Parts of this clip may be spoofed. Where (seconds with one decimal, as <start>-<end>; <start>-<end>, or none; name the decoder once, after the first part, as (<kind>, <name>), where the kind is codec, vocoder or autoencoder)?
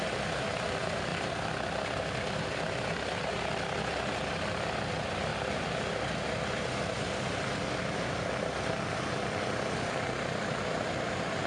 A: none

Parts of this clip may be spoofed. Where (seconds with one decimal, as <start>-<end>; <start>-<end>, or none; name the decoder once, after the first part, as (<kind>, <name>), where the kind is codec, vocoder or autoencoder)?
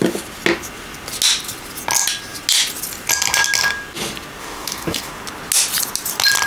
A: 4.4-5.1 (codec, DAC)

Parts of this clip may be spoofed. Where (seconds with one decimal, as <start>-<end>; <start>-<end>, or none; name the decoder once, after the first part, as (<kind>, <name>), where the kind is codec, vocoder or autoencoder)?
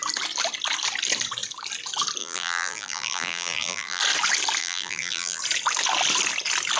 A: 2.2-4.0 (vocoder, BigVGAN v2); 4.6-5.4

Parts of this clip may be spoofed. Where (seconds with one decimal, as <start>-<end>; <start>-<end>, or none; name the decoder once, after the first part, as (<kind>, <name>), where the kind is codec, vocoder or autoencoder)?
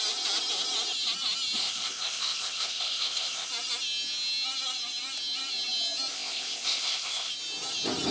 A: 1.6-3.5 (codec, ZipCodec); 6.1-7.3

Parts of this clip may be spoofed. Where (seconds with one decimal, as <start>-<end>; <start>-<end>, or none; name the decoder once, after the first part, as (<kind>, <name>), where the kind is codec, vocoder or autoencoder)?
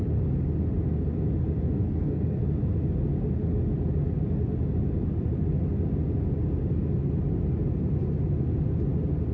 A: 1.8-2.4 (codec, SNAC)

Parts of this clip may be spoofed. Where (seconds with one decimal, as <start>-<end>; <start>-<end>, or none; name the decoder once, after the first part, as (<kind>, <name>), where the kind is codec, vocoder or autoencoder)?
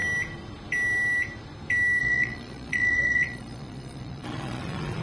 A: 2.0-5.0 (vocoder, Vocos)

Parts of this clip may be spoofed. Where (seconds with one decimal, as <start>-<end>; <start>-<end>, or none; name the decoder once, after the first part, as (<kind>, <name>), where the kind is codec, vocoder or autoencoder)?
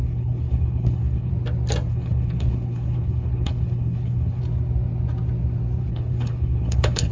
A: 0.0-1.3 (codec, HILCodec); 1.9-4.4; 5.8-7.1